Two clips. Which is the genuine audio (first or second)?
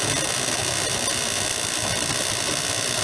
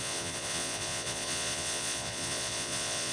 first